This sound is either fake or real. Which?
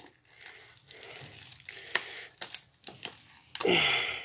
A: real